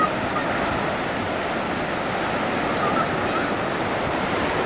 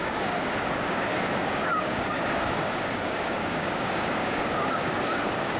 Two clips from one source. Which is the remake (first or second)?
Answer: second